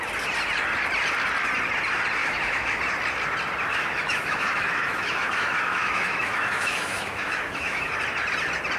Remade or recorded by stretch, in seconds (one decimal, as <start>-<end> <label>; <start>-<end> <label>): 0.0-2.2 recorded; 2.2-2.8 remade; 2.8-3.7 recorded; 3.7-7.9 remade; 7.9-8.8 recorded